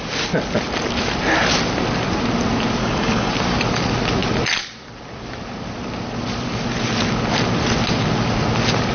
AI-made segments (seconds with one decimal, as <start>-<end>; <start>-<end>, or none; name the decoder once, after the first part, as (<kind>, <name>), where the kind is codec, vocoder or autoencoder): 2.8-3.3 (codec, HILCodec)